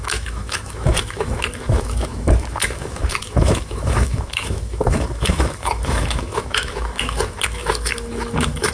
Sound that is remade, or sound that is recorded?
remade